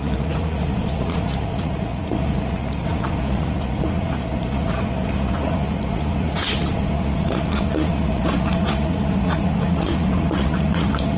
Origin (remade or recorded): remade